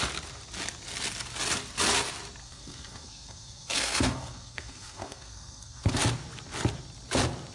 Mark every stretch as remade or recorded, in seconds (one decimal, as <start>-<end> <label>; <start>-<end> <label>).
0.0-2.4 recorded; 2.4-5.9 remade; 5.9-7.5 recorded